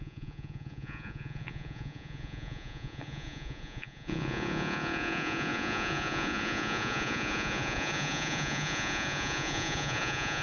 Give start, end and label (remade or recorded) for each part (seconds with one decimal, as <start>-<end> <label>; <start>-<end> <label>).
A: 0.0-10.4 remade